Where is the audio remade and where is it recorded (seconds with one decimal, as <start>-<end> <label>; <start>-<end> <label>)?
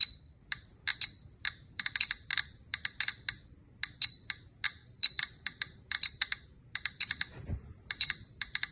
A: 0.0-0.7 remade; 0.7-1.2 recorded; 1.2-3.1 remade; 3.1-4.1 recorded; 4.1-8.7 remade